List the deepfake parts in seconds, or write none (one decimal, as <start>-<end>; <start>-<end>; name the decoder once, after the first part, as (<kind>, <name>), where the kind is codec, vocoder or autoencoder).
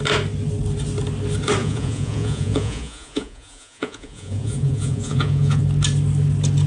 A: 1.6-5.6 (vocoder, Vocos)